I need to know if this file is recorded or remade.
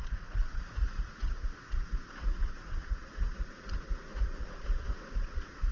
remade